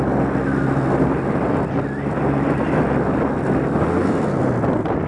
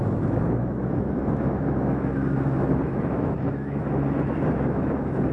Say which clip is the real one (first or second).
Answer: first